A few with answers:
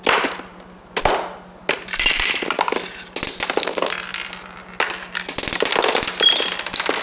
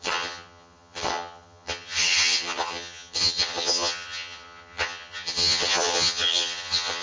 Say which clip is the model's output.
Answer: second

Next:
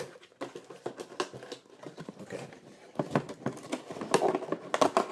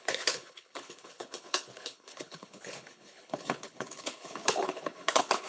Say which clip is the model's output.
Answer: second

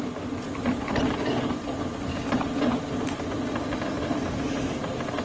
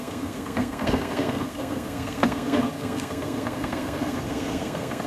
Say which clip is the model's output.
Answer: second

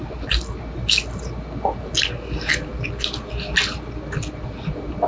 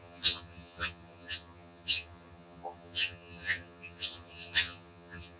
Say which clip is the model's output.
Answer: second